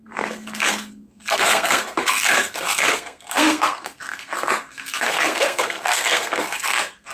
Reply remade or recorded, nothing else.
remade